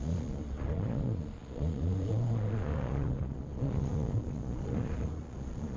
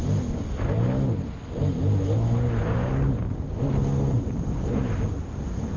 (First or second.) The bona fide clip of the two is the second